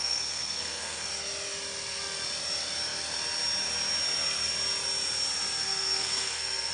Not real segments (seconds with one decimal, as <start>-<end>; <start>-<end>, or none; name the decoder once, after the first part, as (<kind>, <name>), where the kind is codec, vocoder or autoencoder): 0.0-1.1 (codec, SNAC); 5.6-6.7